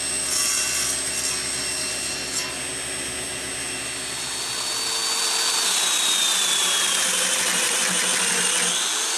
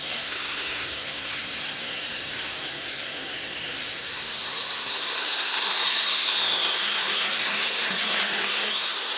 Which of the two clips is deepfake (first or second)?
second